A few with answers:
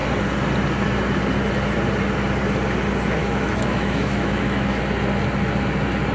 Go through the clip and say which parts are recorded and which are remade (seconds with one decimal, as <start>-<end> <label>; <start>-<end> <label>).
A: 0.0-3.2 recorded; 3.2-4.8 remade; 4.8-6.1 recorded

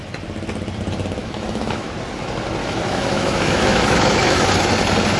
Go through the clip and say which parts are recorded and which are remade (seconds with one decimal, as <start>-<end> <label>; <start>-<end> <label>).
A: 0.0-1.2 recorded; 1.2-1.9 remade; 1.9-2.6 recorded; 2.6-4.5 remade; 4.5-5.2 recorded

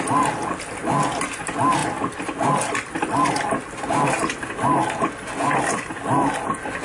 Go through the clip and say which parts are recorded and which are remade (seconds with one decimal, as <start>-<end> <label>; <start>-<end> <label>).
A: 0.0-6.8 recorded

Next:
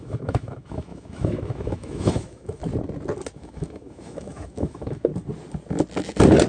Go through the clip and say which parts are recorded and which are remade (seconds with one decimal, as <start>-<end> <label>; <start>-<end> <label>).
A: 0.0-2.6 remade; 2.6-3.3 recorded; 3.3-5.1 remade; 5.1-6.5 recorded

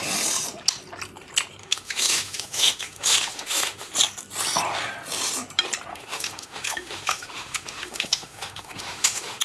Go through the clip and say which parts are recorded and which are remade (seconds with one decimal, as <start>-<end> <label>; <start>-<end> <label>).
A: 0.0-1.6 recorded; 1.6-3.9 remade; 3.9-5.9 recorded; 5.9-9.4 remade